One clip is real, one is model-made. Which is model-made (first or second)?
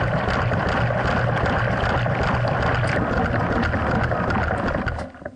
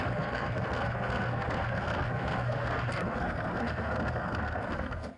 second